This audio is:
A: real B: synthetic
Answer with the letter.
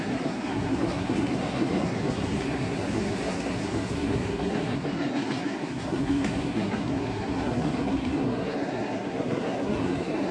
B